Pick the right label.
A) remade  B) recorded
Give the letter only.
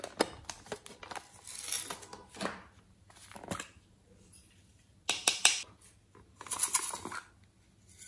B